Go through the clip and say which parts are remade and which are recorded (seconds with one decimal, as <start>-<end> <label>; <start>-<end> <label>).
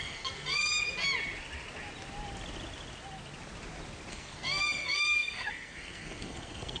0.0-0.7 remade; 0.7-4.1 recorded; 4.1-6.8 remade